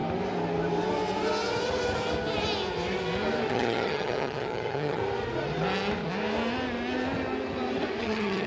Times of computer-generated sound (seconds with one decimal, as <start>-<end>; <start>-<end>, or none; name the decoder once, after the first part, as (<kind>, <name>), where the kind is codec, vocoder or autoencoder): 3.5-5.0 (vocoder, HiFi-GAN); 8.0-8.5